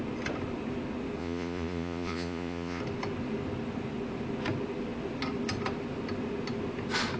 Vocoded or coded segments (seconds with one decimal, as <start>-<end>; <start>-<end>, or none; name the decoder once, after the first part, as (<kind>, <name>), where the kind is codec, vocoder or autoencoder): 1.2-2.8 (vocoder, Vocos)